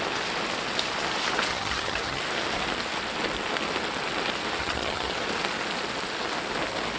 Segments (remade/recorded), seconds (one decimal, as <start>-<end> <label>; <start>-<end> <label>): 0.0-1.5 recorded; 1.5-2.2 remade; 2.2-4.6 recorded; 4.6-5.1 remade; 5.1-7.0 recorded

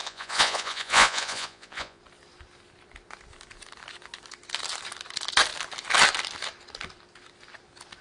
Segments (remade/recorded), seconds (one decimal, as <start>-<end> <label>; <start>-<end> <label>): 0.0-2.0 remade; 2.0-8.0 recorded

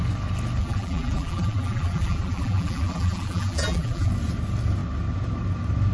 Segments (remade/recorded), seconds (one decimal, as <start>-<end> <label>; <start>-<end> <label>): 0.0-0.6 recorded; 0.6-4.1 remade; 4.1-5.9 recorded